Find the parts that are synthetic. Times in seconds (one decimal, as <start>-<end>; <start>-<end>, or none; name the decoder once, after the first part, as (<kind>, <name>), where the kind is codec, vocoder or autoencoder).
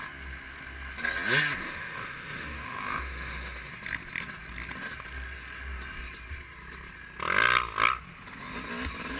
1.6-3.7 (autoencoder, DAC-VAE)